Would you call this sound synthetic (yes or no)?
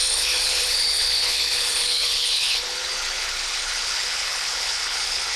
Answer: yes